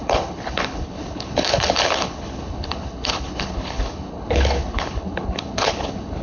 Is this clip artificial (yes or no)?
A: yes